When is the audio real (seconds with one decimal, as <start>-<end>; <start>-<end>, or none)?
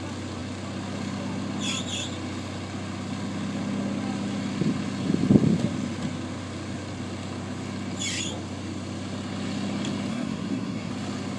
0.0-10.1; 10.9-11.4